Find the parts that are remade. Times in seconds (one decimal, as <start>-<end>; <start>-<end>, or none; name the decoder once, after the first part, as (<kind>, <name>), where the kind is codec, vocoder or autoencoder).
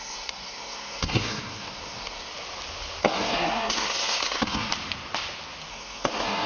0.0-2.3 (codec, SNAC); 3.0-4.7; 5.7-6.5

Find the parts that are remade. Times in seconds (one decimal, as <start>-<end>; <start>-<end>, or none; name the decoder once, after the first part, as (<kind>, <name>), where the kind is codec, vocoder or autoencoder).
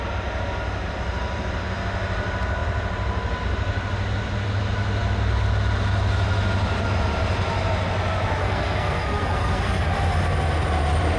8.4-9.8 (codec, SNAC)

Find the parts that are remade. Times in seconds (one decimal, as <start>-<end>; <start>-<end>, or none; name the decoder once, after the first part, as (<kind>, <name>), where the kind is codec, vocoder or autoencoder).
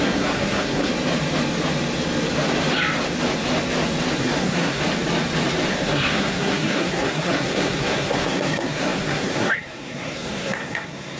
0.0-0.9 (codec, SNAC); 4.2-4.8; 5.7-11.2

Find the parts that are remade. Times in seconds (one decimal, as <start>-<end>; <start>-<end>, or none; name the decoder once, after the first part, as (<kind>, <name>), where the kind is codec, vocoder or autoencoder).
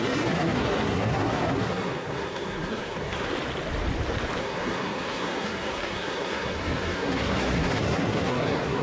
0.0-3.3 (codec, SNAC); 4.4-8.8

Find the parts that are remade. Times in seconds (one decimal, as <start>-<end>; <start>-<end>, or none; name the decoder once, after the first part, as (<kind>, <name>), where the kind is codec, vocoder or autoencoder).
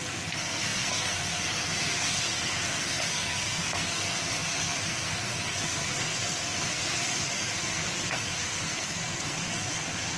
0.0-10.2 (codec, SNAC)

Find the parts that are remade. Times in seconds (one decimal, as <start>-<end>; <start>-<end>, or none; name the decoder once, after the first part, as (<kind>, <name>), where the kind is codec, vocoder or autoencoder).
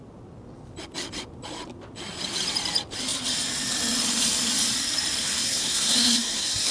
5.2-6.7 (codec, SNAC)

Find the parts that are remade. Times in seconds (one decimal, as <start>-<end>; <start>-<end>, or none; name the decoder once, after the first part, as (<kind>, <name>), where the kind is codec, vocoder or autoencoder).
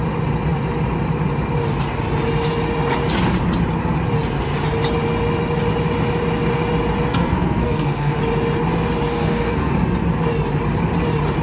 7.1-8.2 (codec, SNAC); 9.1-9.7